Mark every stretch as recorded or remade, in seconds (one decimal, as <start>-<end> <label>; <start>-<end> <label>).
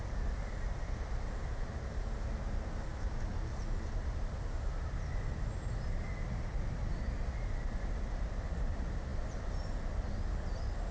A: 0.0-10.9 recorded